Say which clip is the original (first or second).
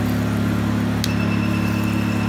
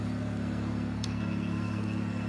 first